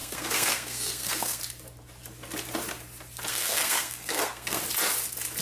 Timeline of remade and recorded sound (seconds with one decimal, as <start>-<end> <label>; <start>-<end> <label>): 0.0-1.4 remade; 1.4-3.3 recorded; 3.3-4.6 remade; 4.6-5.4 recorded